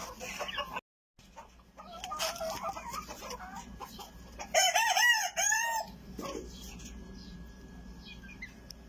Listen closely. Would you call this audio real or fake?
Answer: real